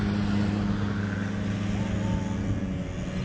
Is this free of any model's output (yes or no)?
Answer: yes